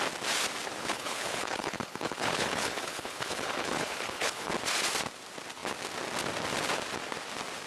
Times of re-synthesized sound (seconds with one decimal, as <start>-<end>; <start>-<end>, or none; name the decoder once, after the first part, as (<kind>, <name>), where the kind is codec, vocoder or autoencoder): 0.8-4.5 (codec, HILCodec)